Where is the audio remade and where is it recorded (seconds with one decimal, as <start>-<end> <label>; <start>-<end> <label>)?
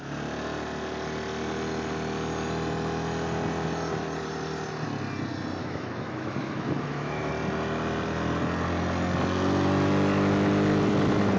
0.0-5.6 recorded; 5.6-7.3 remade; 7.3-11.4 recorded